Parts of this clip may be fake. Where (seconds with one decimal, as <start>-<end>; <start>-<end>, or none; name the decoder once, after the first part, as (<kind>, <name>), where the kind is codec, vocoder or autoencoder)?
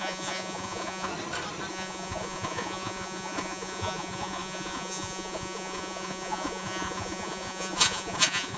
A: 0.0-1.1 (vocoder, Vocos); 1.7-8.6